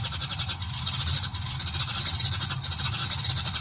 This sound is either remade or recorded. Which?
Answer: recorded